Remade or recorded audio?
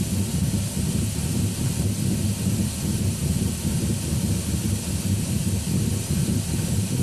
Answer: recorded